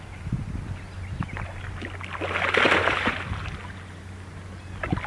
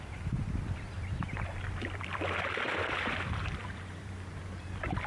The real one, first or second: first